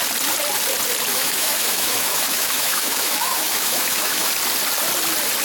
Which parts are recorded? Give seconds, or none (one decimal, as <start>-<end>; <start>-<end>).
0.0-1.1; 4.3-5.4